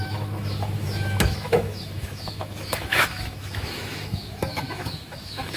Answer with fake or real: fake